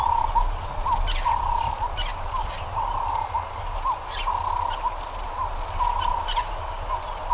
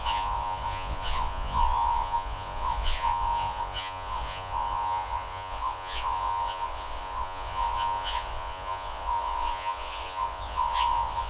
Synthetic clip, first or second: second